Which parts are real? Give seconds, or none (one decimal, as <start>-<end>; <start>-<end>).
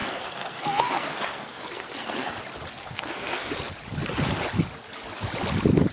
2.3-2.8; 3.5-5.9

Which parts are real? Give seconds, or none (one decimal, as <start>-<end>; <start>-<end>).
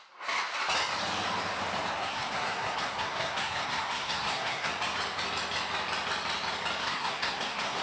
0.0-2.0; 4.7-6.8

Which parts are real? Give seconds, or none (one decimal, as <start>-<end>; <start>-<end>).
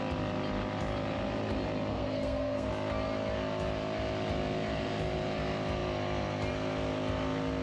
0.0-1.9; 2.7-7.6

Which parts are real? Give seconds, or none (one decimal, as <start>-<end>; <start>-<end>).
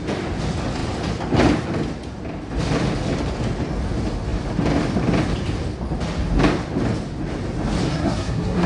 0.0-7.9